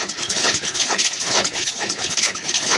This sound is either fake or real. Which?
fake